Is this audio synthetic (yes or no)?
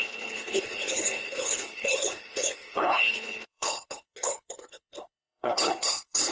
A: yes